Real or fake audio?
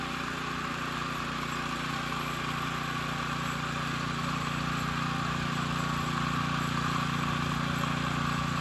real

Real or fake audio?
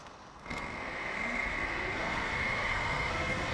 fake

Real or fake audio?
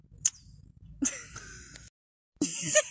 real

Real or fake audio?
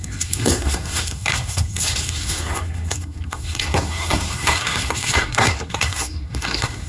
fake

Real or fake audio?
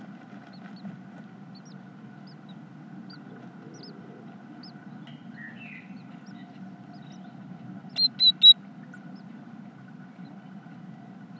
real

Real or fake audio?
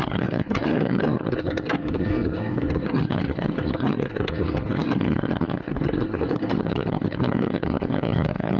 fake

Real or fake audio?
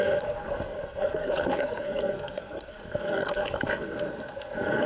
fake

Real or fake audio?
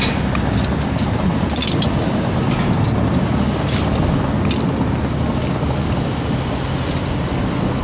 real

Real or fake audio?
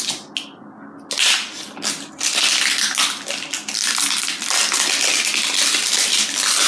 real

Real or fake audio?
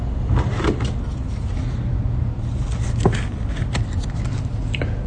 real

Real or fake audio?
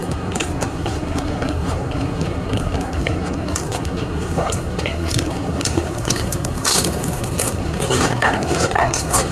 fake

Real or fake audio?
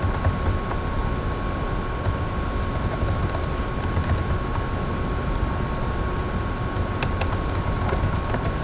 real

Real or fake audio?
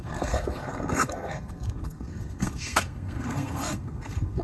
fake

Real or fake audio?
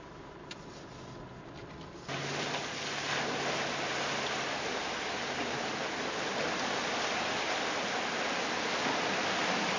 real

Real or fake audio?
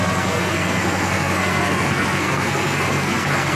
fake